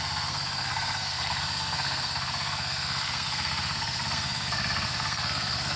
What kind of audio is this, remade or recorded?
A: remade